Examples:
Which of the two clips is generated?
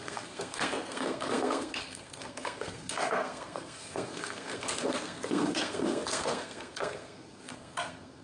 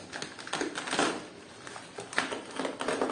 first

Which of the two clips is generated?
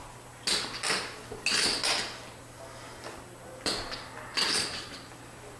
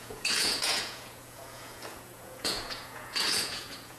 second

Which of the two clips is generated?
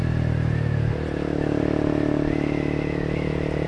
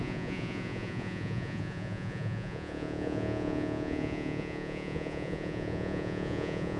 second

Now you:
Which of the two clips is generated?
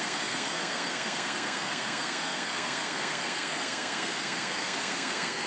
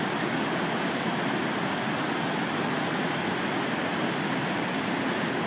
first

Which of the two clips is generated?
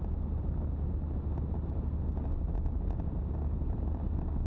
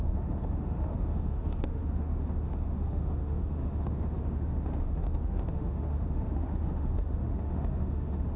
second